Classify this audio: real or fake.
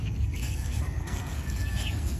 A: fake